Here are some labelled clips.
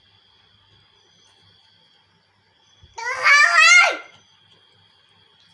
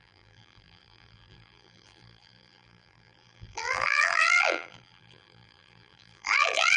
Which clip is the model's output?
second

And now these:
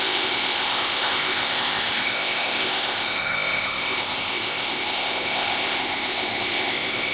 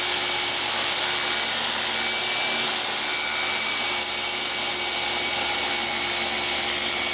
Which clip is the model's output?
first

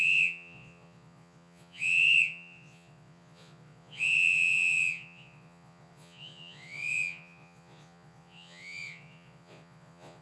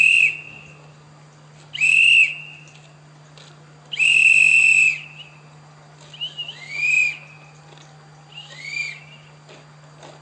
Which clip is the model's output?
first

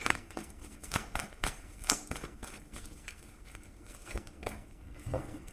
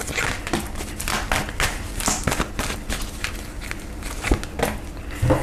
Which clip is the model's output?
first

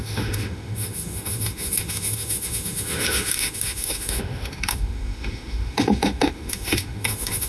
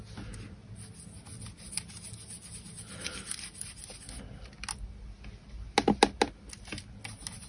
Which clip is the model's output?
first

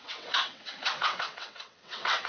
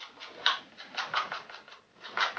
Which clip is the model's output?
first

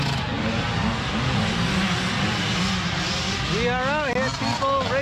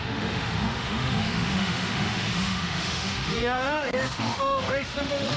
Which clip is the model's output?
second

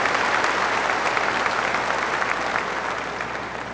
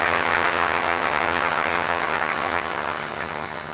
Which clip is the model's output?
second